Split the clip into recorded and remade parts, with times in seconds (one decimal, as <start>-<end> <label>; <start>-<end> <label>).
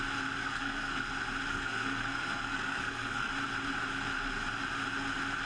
0.0-0.4 recorded; 0.4-1.1 remade; 1.1-1.5 recorded; 1.5-3.3 remade; 3.3-5.5 recorded